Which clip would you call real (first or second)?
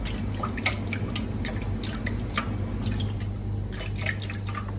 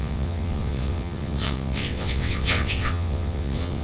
first